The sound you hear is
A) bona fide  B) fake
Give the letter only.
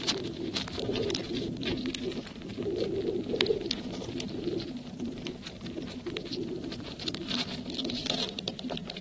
B